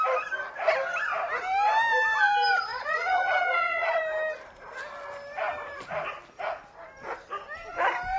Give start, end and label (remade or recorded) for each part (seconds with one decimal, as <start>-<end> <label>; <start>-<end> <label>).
0.0-2.7 recorded; 2.7-4.0 remade; 4.0-8.2 recorded